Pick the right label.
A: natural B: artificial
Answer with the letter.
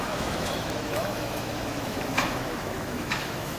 B